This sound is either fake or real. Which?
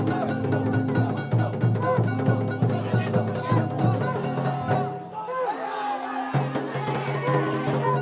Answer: real